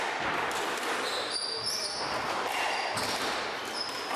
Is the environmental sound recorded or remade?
recorded